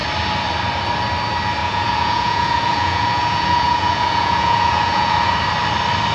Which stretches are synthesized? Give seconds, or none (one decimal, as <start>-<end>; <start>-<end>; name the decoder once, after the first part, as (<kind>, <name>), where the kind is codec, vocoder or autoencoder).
1.6-5.3 (vocoder, Vocos)